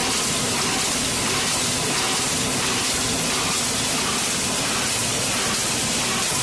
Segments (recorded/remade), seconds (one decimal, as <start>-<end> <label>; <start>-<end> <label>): 0.0-6.4 recorded